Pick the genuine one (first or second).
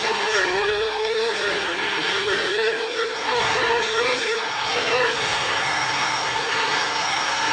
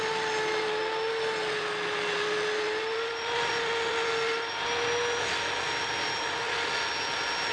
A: second